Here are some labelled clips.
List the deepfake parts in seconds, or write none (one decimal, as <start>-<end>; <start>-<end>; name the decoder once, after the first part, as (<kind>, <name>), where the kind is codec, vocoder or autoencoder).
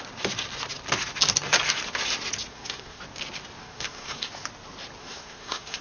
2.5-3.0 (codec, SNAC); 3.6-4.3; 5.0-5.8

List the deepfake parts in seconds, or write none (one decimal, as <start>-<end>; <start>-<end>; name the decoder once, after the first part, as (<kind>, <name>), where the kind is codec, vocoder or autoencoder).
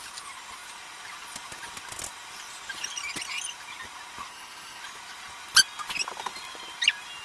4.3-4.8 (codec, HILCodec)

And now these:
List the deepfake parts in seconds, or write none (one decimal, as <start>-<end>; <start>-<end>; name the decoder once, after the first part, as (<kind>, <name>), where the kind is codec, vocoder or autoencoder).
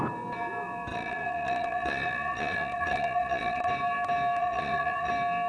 0.9-3.7 (vocoder, Vocos); 4.4-5.1